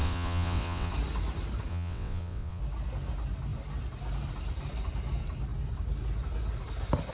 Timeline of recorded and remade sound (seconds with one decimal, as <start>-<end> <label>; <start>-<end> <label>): 0.0-0.9 remade; 0.9-1.7 recorded; 1.7-2.6 remade; 2.6-7.1 recorded